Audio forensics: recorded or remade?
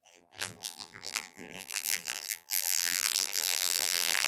remade